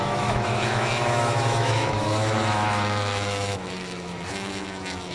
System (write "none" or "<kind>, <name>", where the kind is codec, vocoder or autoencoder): autoencoder, DAC-VAE